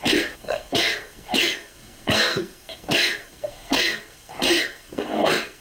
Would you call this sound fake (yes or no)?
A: yes